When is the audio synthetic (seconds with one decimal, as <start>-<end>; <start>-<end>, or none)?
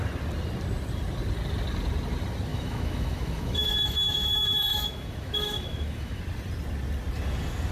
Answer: 2.5-6.2